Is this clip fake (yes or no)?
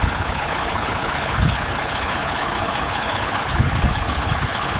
yes